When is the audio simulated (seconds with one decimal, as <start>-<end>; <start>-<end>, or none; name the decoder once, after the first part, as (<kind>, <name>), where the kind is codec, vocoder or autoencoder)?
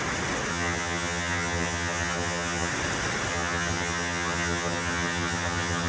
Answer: 0.5-2.7 (vocoder, HiFi-GAN); 3.3-5.9